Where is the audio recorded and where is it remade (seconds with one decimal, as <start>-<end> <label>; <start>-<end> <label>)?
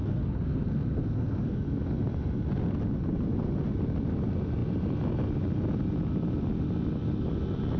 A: 0.0-1.6 remade; 1.6-7.8 recorded